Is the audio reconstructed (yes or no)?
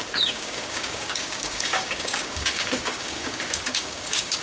yes